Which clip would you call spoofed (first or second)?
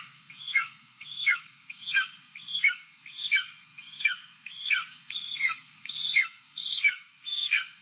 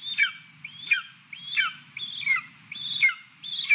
first